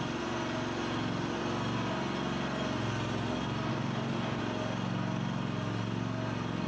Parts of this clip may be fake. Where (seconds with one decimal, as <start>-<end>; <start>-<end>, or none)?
3.7-4.4